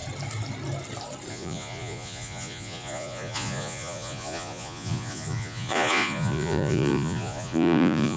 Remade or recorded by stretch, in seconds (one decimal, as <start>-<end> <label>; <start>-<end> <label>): 0.0-1.3 recorded; 1.3-8.2 remade